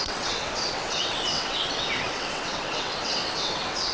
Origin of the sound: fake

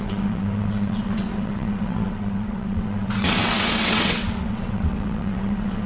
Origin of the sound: fake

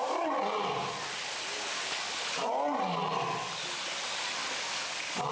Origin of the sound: real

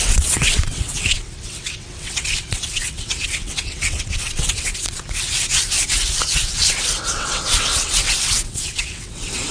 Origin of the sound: fake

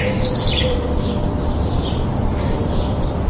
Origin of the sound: real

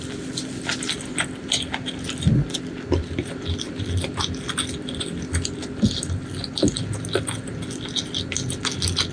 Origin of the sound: real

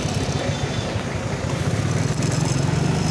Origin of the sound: real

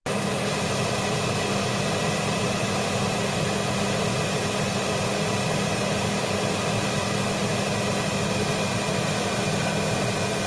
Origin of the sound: real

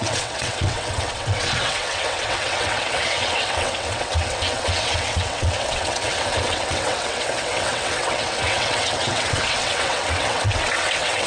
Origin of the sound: fake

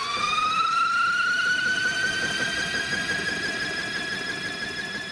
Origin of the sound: real